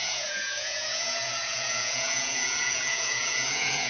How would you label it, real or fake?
fake